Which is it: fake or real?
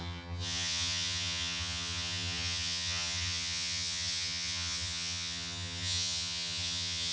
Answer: fake